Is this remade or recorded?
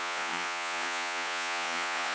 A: remade